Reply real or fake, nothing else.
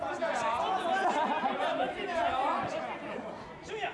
real